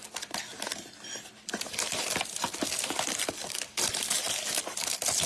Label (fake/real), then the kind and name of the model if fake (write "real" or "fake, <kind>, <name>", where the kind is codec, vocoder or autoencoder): fake, vocoder, BigVGAN v2